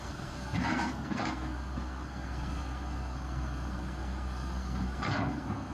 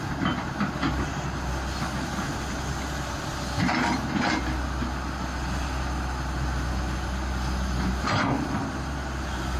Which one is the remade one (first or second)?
first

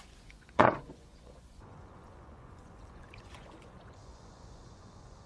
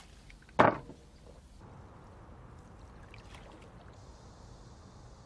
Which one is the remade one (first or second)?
first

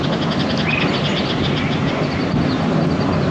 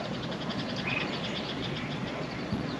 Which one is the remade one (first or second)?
second